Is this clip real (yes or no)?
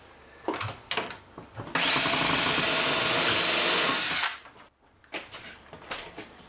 yes